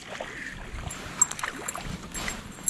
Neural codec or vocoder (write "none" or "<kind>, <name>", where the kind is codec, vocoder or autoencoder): none